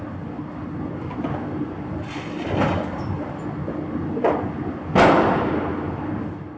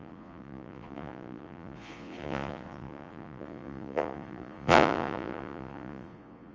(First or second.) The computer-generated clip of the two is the second